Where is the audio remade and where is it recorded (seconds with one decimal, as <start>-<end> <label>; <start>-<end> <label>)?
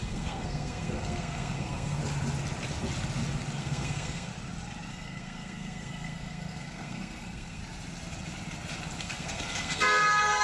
0.0-2.0 remade; 2.0-3.6 recorded; 3.6-4.3 remade; 4.3-4.9 recorded; 4.9-7.6 remade; 7.6-9.0 recorded; 9.0-10.4 remade